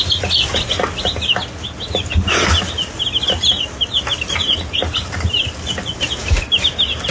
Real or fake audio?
real